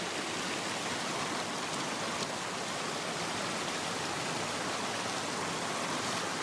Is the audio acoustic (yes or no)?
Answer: yes